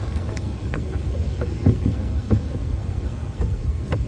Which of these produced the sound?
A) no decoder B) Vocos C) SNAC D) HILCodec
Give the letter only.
C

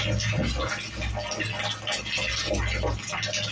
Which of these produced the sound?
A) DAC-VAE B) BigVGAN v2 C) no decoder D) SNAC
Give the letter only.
C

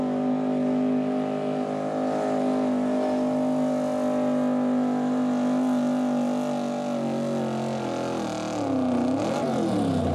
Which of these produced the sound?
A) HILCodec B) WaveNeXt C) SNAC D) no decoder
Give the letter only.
D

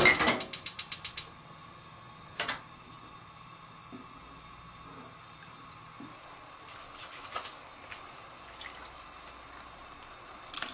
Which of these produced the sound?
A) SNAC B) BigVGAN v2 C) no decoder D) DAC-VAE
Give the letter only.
C